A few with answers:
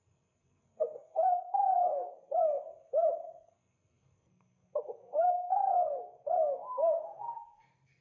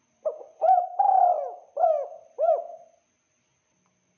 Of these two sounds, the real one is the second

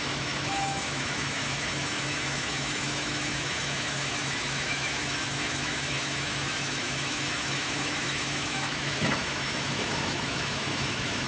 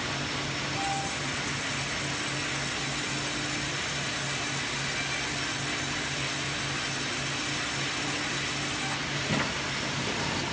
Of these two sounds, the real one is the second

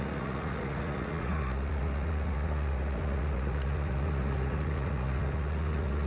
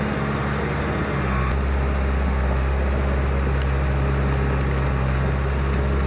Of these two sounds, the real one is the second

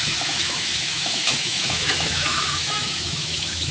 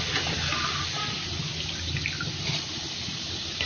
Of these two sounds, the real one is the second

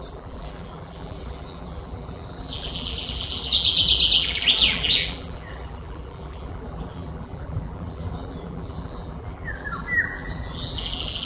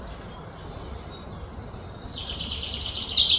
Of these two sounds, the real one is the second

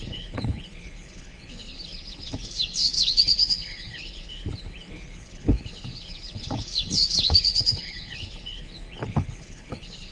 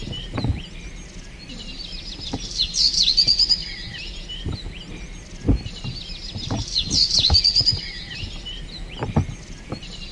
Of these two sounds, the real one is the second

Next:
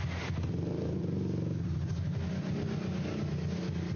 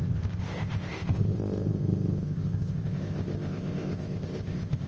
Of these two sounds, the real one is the first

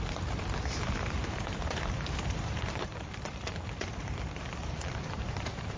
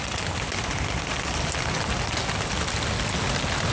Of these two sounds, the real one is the second